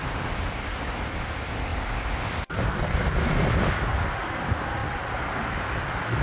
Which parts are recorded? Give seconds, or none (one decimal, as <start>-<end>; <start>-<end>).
0.0-1.7; 3.1-6.2